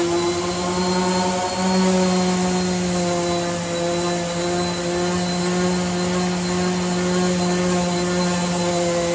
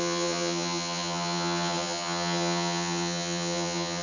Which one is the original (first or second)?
first